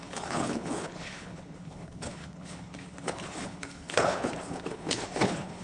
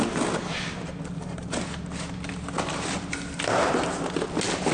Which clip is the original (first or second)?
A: second